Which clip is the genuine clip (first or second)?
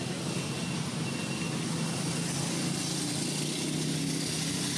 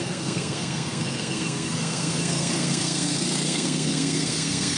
first